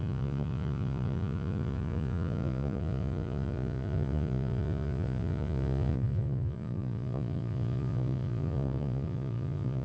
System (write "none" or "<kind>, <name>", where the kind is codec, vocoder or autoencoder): vocoder, Vocos